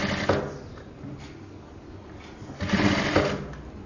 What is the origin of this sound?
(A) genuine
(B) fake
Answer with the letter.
A